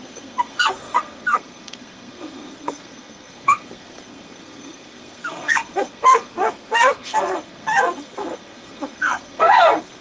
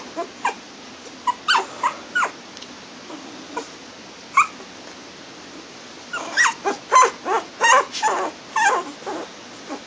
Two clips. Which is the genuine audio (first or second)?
second